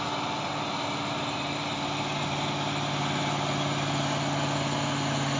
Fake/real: real